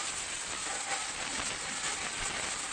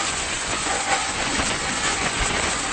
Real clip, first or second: first